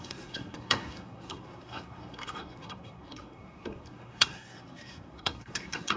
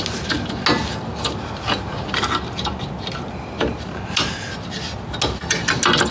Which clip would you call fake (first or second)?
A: first